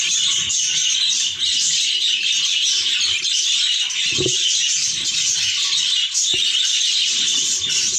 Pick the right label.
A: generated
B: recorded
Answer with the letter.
B